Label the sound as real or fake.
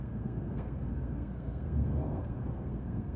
fake